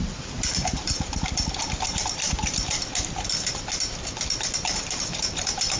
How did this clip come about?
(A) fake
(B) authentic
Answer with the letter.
B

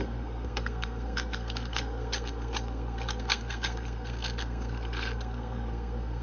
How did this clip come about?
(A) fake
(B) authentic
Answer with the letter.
A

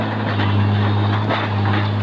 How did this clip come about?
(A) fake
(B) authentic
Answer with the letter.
B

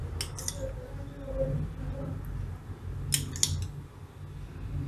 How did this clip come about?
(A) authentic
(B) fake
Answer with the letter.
A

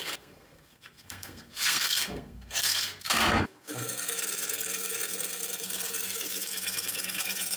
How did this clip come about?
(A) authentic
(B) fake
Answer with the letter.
B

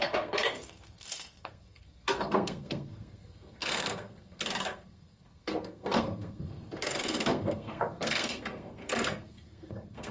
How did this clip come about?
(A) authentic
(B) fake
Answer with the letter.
B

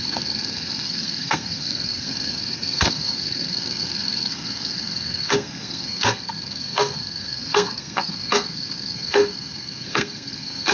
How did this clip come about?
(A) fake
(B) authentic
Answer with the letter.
A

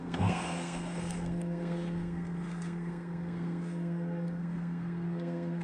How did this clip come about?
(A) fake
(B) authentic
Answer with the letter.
A